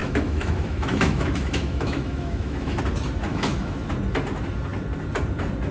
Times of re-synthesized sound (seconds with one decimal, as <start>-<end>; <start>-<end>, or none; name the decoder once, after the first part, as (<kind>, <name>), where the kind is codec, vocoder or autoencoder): 0.0-2.8 (autoencoder, DAC-VAE); 3.3-3.9